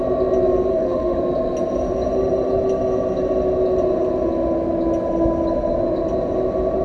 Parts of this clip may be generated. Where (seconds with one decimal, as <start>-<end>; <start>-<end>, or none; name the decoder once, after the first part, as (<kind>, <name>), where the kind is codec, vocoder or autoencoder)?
0.7-1.2 (autoencoder, DAC-VAE)